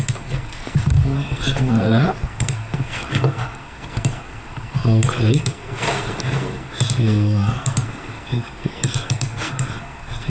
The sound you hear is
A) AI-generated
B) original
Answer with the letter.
A